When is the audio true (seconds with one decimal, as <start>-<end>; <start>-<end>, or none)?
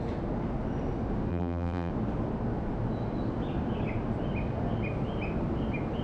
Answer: 0.0-1.3; 1.9-6.0